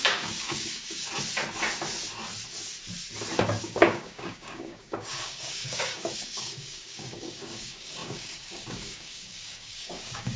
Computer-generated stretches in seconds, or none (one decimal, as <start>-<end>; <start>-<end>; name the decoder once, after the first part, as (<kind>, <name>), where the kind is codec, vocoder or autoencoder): 0.0-1.1 (codec, DAC); 3.6-10.4